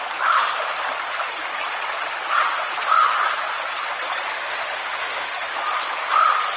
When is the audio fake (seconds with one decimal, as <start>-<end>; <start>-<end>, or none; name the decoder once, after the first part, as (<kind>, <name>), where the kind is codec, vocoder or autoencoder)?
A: 4.3-5.6 (autoencoder, DAC-VAE)